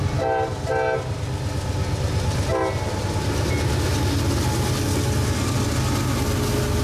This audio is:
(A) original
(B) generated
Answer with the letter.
A